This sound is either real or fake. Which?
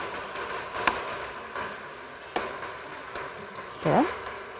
real